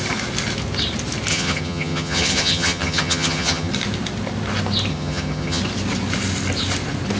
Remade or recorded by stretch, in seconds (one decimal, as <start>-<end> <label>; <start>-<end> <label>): 0.0-1.3 recorded; 1.3-3.7 remade; 3.7-4.9 recorded; 4.9-5.6 remade; 5.6-7.2 recorded